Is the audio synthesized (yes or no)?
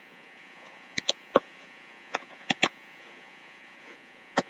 yes